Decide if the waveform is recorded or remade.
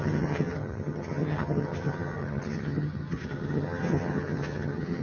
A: remade